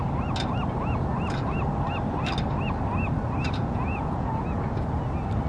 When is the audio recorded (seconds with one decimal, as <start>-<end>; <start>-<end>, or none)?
0.0-3.6; 4.3-5.5